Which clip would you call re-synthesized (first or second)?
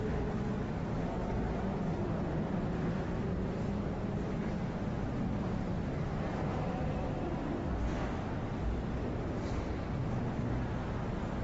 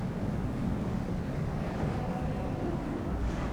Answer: second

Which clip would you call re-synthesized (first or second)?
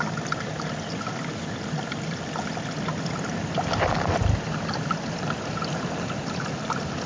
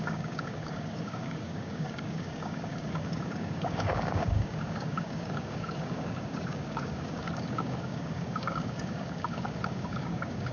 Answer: second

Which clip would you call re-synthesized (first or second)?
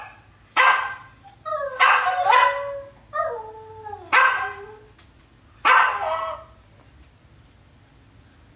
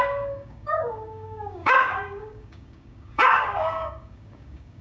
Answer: second